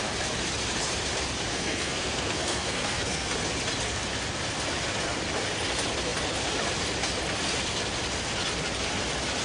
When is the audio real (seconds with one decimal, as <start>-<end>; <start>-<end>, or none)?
0.0-1.5; 3.3-9.4